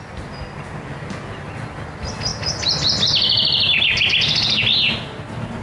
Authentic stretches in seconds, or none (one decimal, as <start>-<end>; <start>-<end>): 0.0-5.6